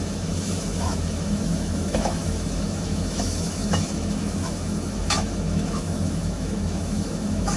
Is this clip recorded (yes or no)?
no